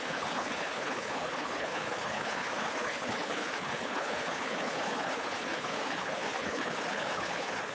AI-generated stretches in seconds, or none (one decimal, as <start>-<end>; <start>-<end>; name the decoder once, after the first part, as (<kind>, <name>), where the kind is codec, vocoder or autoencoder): 0.0-7.7 (codec, HILCodec)